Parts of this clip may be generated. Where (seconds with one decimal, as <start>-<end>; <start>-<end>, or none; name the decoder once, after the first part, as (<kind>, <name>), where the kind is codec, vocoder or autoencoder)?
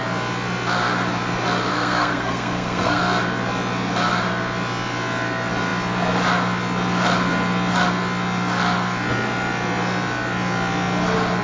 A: 1.7-3.0 (codec, SNAC)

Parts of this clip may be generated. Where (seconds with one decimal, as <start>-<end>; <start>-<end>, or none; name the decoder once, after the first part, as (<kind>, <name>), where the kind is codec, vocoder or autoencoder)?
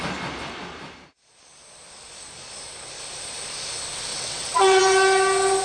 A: 4.1-4.8 (vocoder, WaveNeXt)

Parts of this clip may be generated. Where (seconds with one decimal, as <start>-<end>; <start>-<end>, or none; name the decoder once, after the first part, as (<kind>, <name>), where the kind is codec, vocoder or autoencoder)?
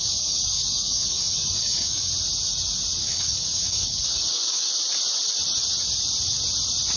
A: 0.0-2.1 (codec, DAC); 3.0-4.7